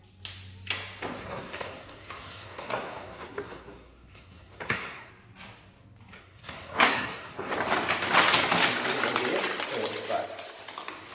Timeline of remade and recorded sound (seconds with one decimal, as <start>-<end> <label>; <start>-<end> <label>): 0.0-1.2 recorded; 1.2-5.1 remade; 5.1-6.2 recorded; 6.2-7.5 remade; 7.5-11.1 recorded